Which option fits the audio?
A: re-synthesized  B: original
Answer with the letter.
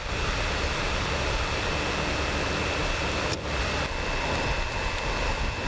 B